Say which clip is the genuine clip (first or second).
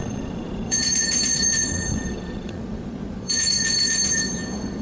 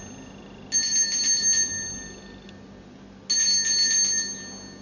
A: second